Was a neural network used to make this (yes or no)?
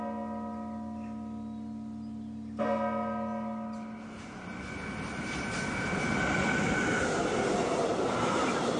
no